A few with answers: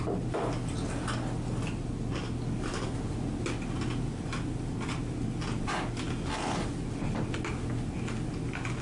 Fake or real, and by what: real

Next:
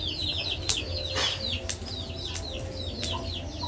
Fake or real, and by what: real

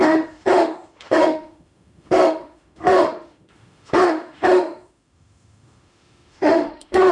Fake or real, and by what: fake, autoencoder, DAC-VAE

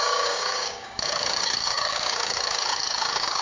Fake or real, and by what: fake, codec, DAC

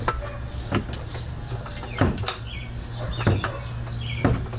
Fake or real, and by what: real